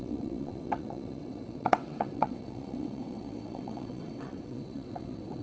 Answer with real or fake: fake